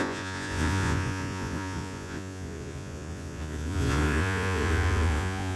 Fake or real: fake